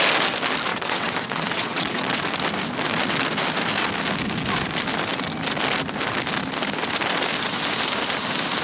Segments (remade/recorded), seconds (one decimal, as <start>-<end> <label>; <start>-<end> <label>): 0.0-0.7 recorded; 0.7-2.2 remade; 2.2-8.6 recorded